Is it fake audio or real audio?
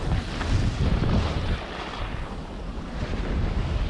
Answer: real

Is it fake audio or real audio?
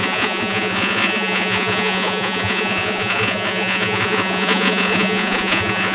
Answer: fake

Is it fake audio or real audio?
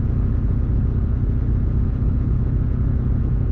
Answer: fake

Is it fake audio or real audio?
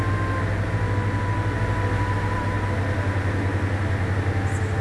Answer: real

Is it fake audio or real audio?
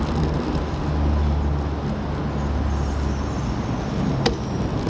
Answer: real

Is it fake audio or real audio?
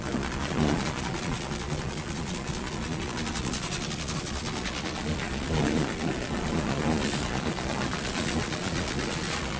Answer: fake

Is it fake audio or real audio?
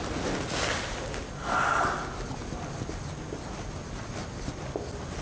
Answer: real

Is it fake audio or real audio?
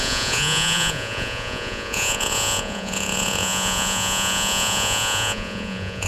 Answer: fake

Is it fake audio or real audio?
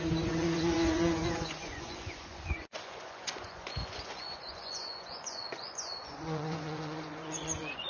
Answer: fake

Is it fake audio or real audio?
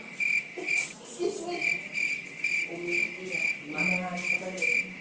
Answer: real